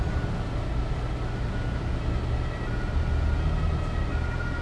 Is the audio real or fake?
real